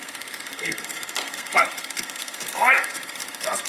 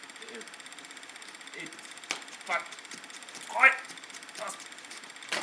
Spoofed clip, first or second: first